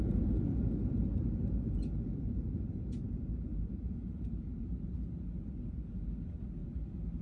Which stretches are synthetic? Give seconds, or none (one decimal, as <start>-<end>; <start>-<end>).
0.0-7.2